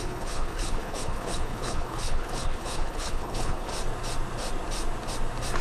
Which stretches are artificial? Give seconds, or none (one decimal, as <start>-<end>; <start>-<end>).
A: 0.0-3.7